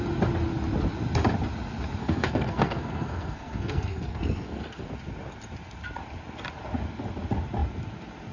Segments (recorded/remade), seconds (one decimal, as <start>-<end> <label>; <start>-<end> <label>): 0.0-2.0 recorded; 2.0-4.9 remade; 4.9-8.3 recorded